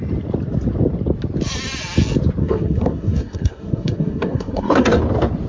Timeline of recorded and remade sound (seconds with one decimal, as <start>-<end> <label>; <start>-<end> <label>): 0.0-2.4 recorded; 2.4-5.0 remade; 5.0-5.5 recorded

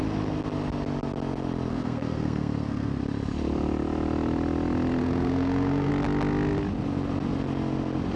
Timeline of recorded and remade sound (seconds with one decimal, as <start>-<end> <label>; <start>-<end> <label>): 0.0-1.7 recorded; 1.7-3.0 remade; 3.0-5.0 recorded; 5.0-5.9 remade; 5.9-8.2 recorded

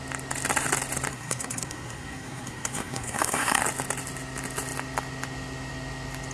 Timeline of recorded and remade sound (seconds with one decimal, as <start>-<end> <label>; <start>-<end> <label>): 0.0-1.1 recorded; 1.1-3.6 remade; 3.6-6.3 recorded

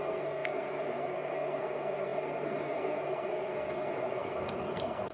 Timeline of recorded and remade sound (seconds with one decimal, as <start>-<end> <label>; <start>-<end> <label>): 0.0-5.1 remade

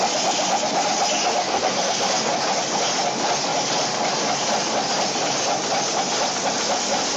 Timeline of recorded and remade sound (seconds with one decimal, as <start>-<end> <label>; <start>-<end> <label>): 0.0-1.5 recorded; 1.5-2.3 remade; 2.3-7.2 recorded

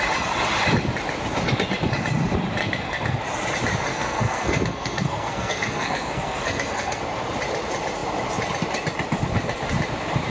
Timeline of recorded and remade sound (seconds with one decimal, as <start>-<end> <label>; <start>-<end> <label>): 0.0-2.6 recorded; 2.6-3.2 remade; 3.2-3.9 recorded; 3.9-7.0 remade; 7.0-10.3 recorded